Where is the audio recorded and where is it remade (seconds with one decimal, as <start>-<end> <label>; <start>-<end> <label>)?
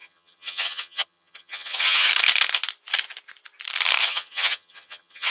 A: 0.0-2.1 remade; 2.1-4.0 recorded; 4.0-5.3 remade